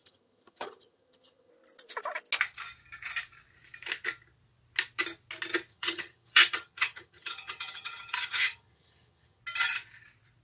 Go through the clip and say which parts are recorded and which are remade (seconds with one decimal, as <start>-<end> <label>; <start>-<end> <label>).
0.0-1.5 remade; 1.5-5.7 recorded; 5.7-9.4 remade; 9.4-10.4 recorded